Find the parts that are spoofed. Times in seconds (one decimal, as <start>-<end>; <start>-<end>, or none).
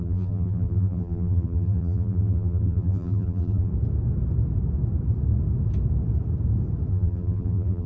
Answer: 0.0-3.7; 6.9-7.9